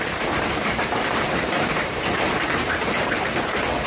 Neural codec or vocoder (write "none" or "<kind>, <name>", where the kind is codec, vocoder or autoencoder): vocoder, BigVGAN v2